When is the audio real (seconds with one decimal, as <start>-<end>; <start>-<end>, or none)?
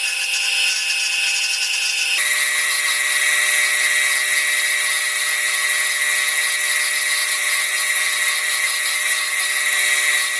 0.8-1.5; 2.1-7.2; 9.4-10.4